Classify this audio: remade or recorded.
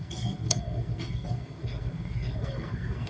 remade